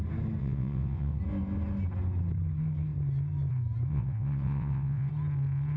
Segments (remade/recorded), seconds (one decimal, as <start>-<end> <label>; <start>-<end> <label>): 0.0-0.4 recorded; 0.4-1.2 remade; 1.2-3.9 recorded; 3.9-5.1 remade; 5.1-5.8 recorded